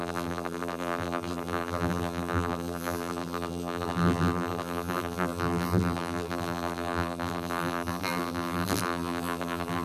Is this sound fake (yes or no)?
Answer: yes